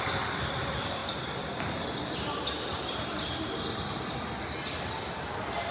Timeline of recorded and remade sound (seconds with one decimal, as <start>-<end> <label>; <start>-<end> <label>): 0.0-5.7 recorded